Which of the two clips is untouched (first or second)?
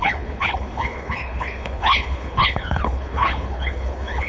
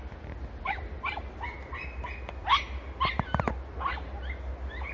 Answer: second